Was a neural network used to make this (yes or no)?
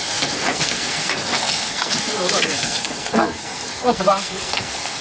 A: yes